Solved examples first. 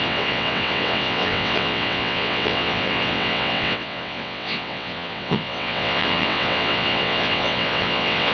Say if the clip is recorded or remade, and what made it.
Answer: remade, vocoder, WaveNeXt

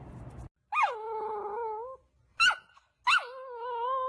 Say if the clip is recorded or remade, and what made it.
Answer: recorded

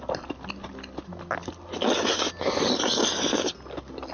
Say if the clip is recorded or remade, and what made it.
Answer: recorded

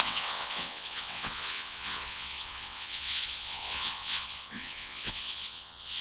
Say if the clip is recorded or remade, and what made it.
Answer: remade, vocoder, WaveNeXt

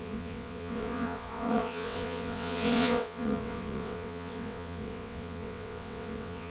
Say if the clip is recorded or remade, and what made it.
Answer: remade, vocoder, WaveNeXt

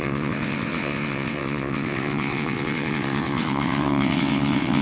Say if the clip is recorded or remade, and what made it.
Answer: remade, vocoder, WaveNeXt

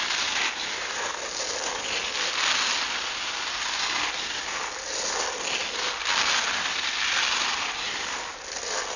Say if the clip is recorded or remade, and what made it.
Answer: recorded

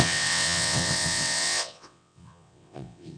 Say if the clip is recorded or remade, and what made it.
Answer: remade, vocoder, WaveNeXt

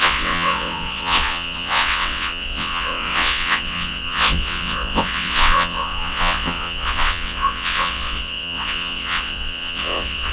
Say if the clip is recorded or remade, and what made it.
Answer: remade, vocoder, WaveNeXt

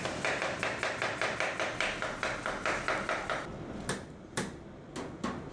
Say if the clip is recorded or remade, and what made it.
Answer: recorded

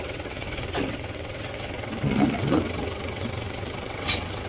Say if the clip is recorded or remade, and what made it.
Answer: remade, vocoder, WaveNeXt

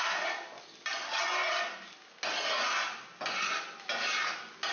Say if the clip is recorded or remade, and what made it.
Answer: recorded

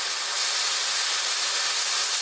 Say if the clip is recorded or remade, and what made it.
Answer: recorded